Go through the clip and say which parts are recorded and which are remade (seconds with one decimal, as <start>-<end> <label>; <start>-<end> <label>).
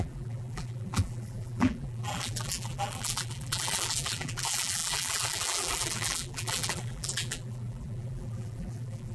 0.0-9.1 remade